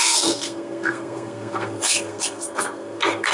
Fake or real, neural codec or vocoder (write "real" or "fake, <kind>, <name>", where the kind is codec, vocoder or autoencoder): fake, codec, SNAC